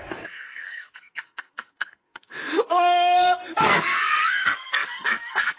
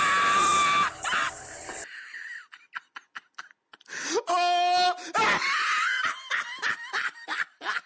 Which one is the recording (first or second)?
second